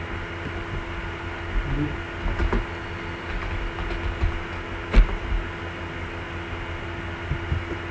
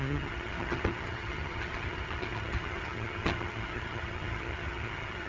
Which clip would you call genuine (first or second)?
first